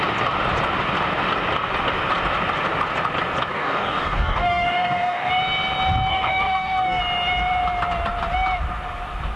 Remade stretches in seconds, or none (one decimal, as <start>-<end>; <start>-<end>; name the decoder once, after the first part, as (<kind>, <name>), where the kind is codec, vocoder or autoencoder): 3.5-5.3 (codec, DAC); 6.1-7.0

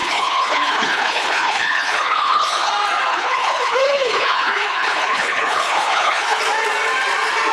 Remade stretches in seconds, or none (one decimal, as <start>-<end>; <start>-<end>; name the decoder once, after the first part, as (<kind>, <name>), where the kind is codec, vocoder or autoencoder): 0.0-2.7 (codec, HILCodec); 3.1-6.4

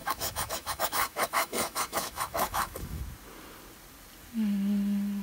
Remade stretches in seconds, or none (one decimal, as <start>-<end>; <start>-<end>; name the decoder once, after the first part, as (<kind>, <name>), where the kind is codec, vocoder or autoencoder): 0.0-3.0 (autoencoder, DAC-VAE)

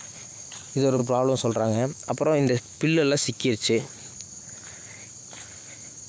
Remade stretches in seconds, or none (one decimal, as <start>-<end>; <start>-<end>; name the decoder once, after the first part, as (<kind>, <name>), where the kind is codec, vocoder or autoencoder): 1.0-3.9 (autoencoder, DAC-VAE)

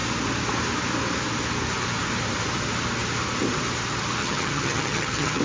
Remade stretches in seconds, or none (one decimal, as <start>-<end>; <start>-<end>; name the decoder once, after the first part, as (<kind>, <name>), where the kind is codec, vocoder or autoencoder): 4.2-5.4 (vocoder, HiFi-GAN)